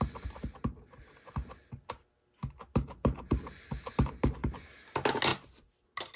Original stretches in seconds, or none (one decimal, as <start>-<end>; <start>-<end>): 0.0-6.2